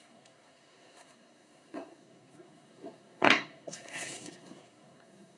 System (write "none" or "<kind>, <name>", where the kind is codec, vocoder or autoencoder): codec, SNAC